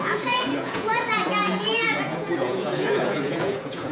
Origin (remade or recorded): remade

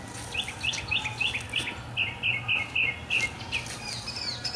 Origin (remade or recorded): recorded